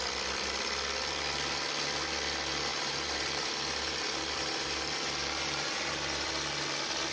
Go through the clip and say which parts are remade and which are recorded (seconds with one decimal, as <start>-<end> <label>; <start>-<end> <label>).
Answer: 0.0-2.7 recorded; 2.7-6.3 remade; 6.3-7.1 recorded